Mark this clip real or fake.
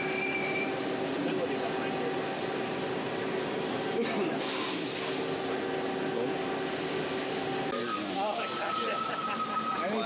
real